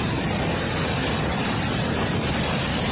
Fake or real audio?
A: real